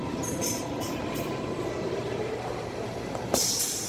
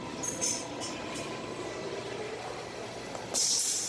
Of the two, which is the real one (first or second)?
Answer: second